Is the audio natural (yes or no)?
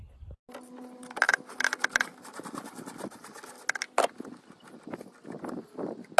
yes